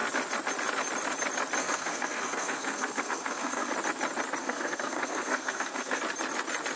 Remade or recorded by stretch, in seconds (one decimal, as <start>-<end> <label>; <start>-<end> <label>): 0.0-1.6 recorded; 1.6-3.7 remade; 3.7-4.4 recorded; 4.4-6.0 remade; 6.0-6.8 recorded